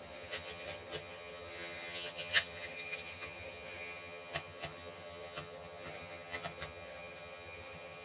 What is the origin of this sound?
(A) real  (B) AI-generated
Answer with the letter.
B